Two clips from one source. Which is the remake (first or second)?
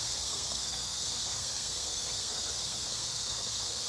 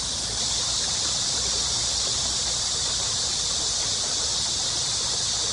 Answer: first